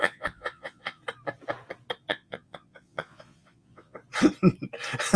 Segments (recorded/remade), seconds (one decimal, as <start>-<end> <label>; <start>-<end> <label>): 0.0-1.0 remade; 1.0-2.1 recorded; 2.1-4.0 remade; 4.0-5.2 recorded

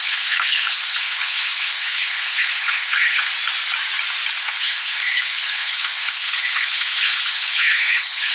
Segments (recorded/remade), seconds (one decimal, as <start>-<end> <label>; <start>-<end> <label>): 0.0-3.3 remade; 3.3-4.4 recorded; 4.4-8.3 remade